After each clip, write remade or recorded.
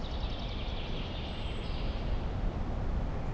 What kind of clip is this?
recorded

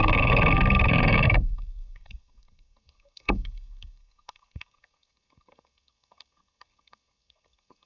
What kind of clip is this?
remade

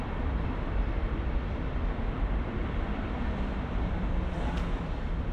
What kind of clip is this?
remade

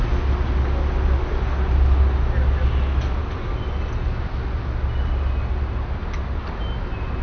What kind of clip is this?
recorded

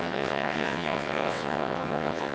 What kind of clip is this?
remade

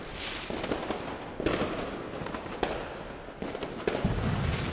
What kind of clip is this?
recorded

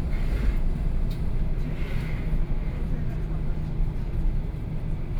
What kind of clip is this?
recorded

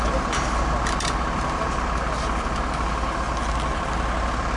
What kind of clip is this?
recorded